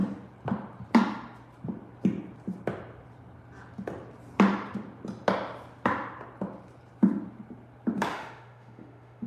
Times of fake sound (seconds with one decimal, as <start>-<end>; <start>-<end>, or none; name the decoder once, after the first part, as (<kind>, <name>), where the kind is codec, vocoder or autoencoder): 8.1-9.3 (autoencoder, DAC-VAE)